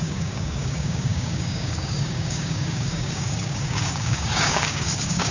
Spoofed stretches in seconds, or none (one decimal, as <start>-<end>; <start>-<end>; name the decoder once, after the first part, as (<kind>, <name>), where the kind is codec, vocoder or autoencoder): 0.0-5.3 (codec, DAC)